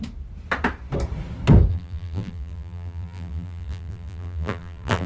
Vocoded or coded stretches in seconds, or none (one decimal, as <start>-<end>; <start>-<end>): 1.7-5.1